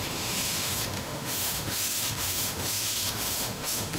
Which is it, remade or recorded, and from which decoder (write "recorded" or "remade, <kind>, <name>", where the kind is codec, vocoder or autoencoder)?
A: remade, autoencoder, DAC-VAE